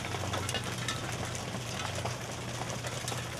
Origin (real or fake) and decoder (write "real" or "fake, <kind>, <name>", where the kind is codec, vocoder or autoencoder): real